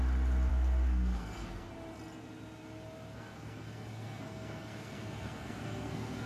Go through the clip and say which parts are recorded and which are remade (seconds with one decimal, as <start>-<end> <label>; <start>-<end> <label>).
0.0-0.5 recorded; 0.5-1.7 remade; 1.7-3.1 recorded; 3.1-6.3 remade